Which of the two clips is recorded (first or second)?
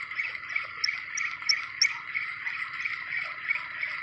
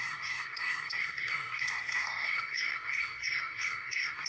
first